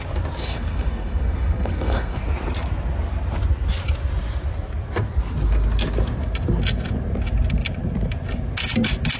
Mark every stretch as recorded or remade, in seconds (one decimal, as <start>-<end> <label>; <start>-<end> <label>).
0.0-0.4 recorded; 0.4-2.2 remade; 2.2-9.2 recorded